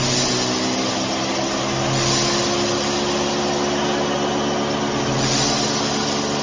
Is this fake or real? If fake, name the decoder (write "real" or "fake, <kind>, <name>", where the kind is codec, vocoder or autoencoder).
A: real